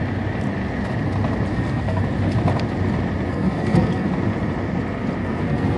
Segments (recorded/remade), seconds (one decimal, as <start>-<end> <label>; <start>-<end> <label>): 0.0-1.5 recorded; 1.5-2.0 remade; 2.0-3.3 recorded; 3.3-4.1 remade; 4.1-5.2 recorded; 5.2-5.8 remade